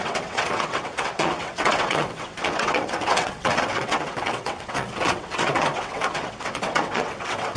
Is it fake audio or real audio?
fake